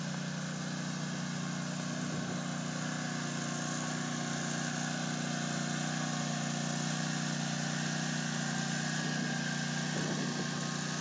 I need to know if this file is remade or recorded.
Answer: recorded